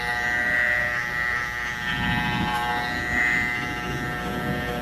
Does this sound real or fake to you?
real